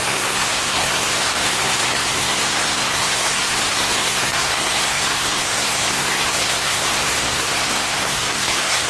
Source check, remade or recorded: remade